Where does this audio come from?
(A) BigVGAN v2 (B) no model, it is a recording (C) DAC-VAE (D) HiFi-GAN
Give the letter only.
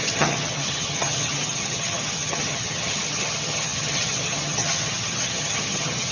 D